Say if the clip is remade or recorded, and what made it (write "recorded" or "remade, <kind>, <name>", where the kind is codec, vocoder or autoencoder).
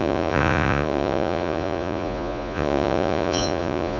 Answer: remade, vocoder, Vocos